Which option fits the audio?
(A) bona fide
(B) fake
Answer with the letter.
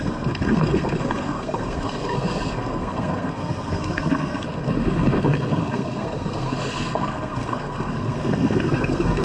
B